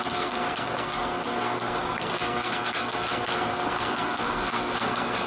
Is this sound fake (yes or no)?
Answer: yes